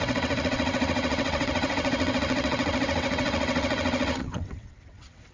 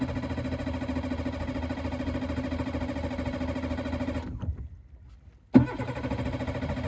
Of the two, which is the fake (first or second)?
first